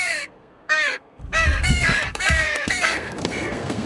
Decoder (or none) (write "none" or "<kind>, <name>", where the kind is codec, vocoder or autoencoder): codec, SNAC